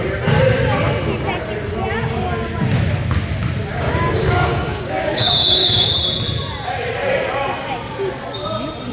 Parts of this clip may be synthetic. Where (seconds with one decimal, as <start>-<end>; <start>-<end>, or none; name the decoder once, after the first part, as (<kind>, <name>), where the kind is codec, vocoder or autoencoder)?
3.7-5.9 (codec, DAC)

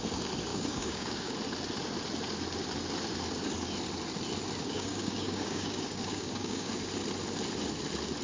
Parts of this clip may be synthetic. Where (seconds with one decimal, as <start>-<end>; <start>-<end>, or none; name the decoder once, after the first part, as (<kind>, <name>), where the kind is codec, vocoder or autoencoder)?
0.5-1.3 (codec, DAC); 4.6-6.7

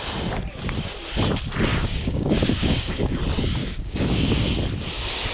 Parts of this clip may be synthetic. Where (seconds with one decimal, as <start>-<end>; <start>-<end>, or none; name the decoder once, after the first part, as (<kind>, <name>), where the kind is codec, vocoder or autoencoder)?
1.7-3.2 (codec, DAC); 3.6-4.5

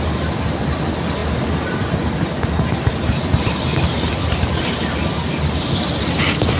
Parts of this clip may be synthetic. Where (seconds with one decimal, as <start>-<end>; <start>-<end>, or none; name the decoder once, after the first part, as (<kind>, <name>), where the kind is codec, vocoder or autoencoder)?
none

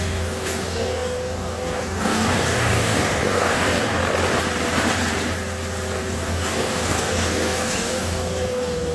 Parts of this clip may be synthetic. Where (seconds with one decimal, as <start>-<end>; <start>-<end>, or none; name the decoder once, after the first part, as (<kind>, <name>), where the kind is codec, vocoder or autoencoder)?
0.0-4.0 (codec, DAC); 6.0-8.9

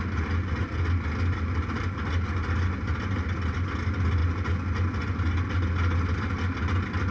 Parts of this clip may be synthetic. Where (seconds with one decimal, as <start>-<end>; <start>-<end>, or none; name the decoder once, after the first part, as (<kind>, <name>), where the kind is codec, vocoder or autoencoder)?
none

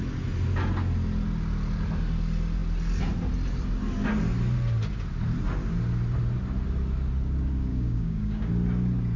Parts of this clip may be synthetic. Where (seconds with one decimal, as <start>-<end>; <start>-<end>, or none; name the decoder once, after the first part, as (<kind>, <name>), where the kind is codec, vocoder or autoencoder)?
7.7-8.5 (codec, DAC)